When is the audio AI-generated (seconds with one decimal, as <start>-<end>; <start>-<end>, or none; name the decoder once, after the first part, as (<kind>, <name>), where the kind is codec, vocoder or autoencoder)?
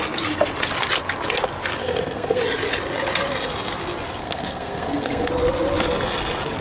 1.8-2.4 (codec, SNAC); 4.2-5.3